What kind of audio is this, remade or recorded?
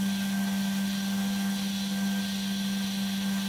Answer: recorded